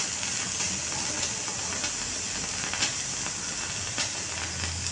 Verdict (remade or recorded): recorded